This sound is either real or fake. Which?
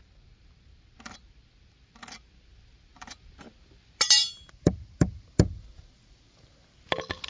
real